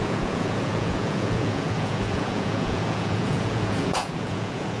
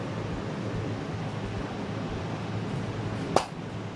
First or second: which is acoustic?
second